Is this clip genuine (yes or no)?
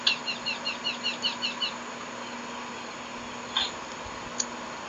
yes